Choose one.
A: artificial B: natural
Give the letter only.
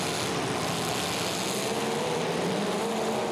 B